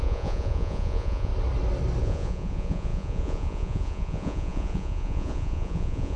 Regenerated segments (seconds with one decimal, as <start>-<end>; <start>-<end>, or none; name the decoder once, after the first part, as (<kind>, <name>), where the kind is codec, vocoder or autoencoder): 0.0-1.3 (vocoder, Vocos); 2.0-6.2